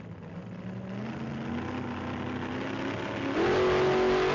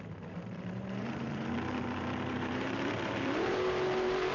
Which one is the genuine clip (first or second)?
first